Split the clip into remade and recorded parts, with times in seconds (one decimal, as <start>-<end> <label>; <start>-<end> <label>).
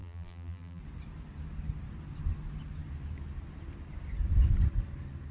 0.0-0.8 remade; 0.8-5.3 recorded